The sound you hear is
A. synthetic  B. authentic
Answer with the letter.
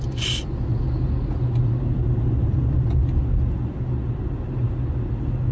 B